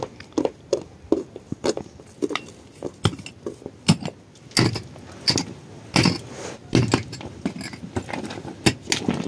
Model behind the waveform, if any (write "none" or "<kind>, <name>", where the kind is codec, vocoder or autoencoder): none